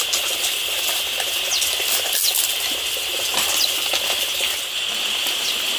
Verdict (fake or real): real